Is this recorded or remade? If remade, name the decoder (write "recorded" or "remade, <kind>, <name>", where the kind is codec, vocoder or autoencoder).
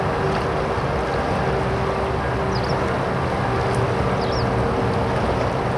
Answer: recorded